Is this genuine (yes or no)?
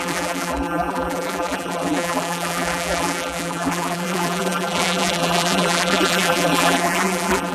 no